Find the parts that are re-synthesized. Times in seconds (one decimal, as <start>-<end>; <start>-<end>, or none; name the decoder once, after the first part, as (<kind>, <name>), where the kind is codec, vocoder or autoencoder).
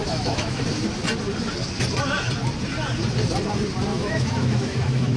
0.0-0.6 (autoencoder, DAC-VAE); 3.9-5.2